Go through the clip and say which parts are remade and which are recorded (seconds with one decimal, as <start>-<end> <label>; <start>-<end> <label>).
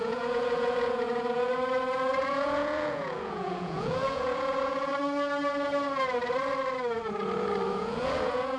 0.0-1.5 remade; 1.5-2.2 recorded; 2.2-4.9 remade; 4.9-7.7 recorded; 7.7-8.6 remade